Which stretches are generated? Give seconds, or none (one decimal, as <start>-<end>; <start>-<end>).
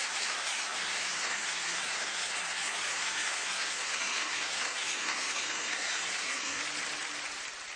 0.0-6.6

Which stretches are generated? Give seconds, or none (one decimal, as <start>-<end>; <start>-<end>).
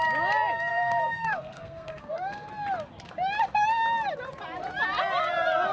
0.7-2.5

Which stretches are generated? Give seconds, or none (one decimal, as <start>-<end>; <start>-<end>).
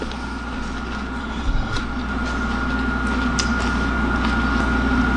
1.2-1.8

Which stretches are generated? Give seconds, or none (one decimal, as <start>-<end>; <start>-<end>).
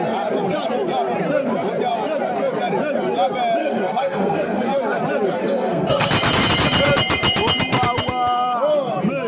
3.6-4.6; 5.4-6.1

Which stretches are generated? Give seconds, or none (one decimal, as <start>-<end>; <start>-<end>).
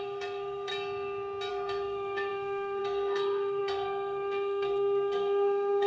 0.0-0.7; 1.5-5.9